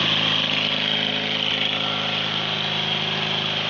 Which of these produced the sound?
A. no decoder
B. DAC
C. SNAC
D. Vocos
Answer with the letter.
A